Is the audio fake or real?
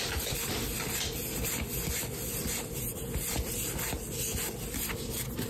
real